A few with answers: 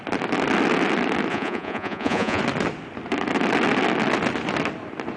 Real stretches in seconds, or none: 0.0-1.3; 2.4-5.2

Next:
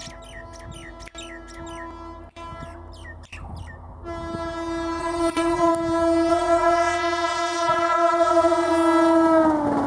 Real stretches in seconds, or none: 0.0-5.0; 5.7-6.3; 8.7-9.9

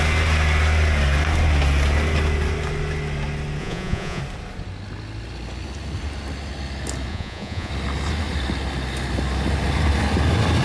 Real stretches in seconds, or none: 0.0-3.6; 4.2-7.1; 7.7-10.6

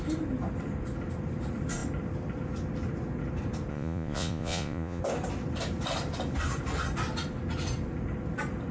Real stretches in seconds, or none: 0.0-3.7; 5.0-8.7

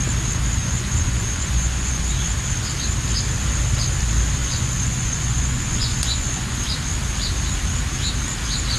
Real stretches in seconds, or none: 0.0-0.6; 2.0-4.4; 6.6-8.8

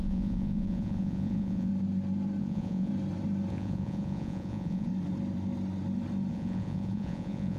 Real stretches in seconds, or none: 1.7-2.4; 2.9-3.5; 4.9-6.3

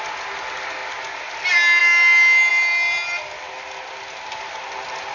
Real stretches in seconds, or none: 0.0-5.1

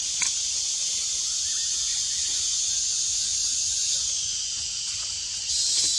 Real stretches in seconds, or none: 0.0-1.9; 5.5-6.0